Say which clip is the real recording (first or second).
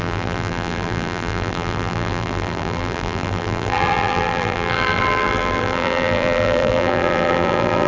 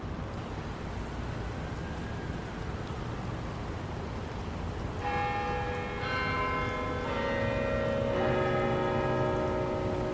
second